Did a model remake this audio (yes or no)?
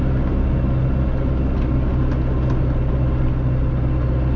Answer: no